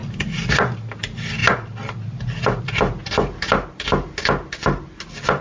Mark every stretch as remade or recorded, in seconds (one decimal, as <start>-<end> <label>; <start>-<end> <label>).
0.0-0.7 remade; 0.7-5.4 recorded